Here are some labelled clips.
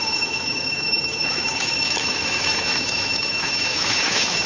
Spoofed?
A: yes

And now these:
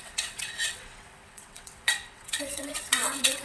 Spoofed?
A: yes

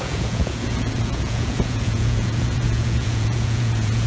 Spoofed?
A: yes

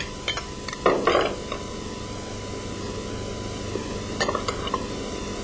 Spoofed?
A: no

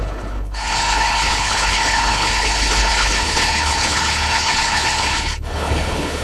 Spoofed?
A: yes